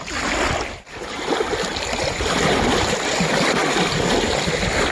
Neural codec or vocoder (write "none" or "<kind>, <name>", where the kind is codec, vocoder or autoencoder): none